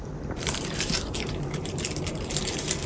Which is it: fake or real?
fake